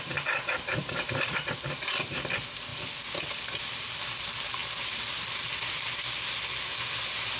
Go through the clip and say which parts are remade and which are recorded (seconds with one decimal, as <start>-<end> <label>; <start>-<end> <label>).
0.0-0.8 recorded; 0.8-1.4 remade; 1.4-4.6 recorded; 4.6-5.7 remade; 5.7-7.4 recorded